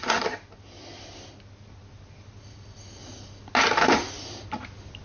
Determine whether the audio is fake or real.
real